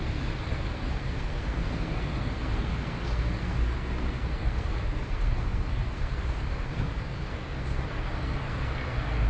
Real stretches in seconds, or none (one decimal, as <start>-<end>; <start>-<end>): none